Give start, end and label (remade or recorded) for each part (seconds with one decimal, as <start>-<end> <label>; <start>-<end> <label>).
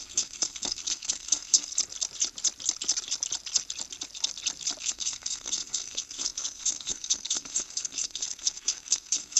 0.0-1.7 remade; 1.7-4.8 recorded; 4.8-9.4 remade